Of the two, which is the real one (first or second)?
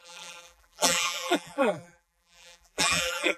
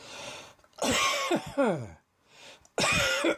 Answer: second